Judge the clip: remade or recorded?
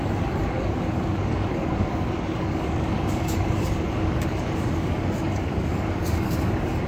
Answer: remade